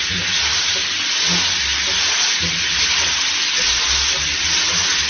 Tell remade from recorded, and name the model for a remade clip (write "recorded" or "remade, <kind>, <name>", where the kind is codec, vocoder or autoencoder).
recorded